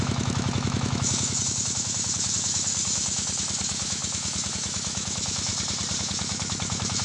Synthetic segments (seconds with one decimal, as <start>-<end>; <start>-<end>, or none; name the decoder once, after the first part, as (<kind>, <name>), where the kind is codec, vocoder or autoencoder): 0.0-5.5 (autoencoder, DAC-VAE); 6.0-7.0